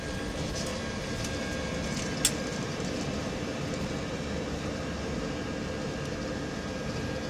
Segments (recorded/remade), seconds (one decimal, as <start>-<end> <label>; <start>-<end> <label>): 0.0-7.3 recorded